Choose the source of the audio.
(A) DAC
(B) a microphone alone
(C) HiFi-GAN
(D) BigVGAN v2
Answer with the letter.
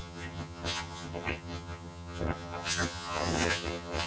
C